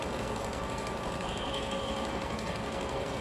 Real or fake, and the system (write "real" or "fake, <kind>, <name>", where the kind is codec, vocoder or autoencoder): fake, codec, SNAC